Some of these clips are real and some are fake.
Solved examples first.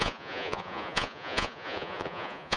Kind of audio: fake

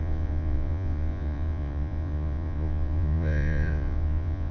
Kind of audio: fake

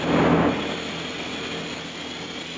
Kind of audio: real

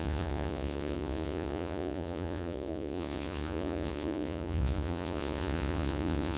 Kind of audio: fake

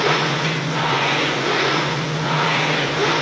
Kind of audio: fake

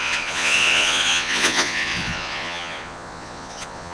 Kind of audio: fake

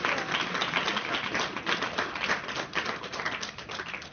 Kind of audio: real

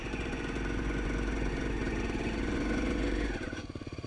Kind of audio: fake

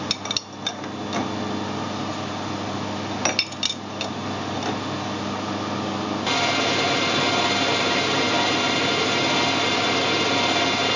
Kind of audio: real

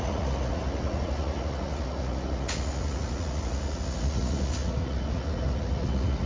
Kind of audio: fake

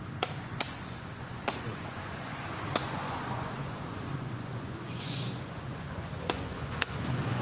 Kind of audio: fake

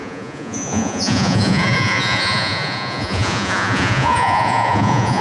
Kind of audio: fake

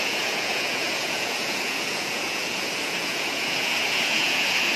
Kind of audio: fake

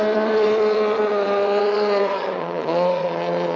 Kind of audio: fake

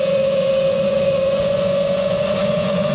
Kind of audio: fake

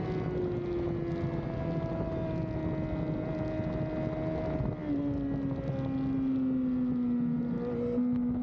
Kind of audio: real